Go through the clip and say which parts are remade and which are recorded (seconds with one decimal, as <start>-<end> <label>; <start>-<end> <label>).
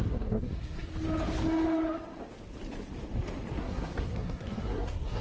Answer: 0.0-0.9 remade; 0.9-3.6 recorded; 3.6-5.2 remade